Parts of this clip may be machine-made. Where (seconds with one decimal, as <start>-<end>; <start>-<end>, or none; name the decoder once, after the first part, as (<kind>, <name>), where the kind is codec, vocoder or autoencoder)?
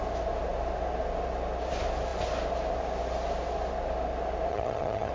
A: 4.5-5.1 (vocoder, HiFi-GAN)